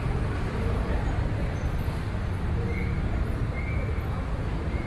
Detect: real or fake real